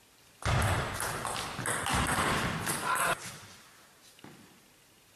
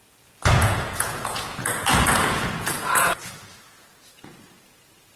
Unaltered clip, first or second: first